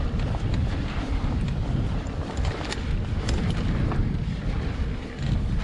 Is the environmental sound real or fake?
fake